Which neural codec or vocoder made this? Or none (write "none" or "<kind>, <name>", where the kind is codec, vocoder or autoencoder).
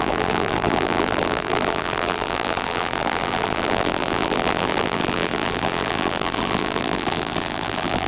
vocoder, BigVGAN v2